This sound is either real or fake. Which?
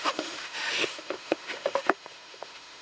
fake